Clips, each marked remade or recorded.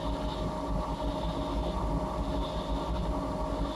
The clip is recorded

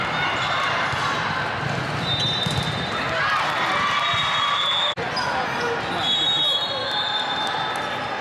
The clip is recorded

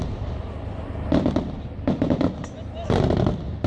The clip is recorded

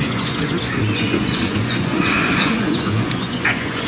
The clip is remade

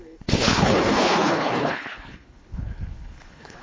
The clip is remade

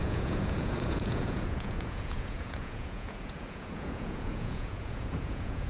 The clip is remade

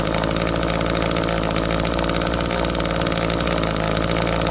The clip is recorded